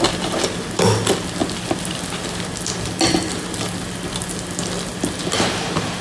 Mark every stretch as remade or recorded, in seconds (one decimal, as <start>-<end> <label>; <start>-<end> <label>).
0.0-6.0 recorded